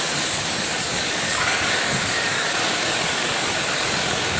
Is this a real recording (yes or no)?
no